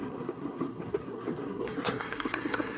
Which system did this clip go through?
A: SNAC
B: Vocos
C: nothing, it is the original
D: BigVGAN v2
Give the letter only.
A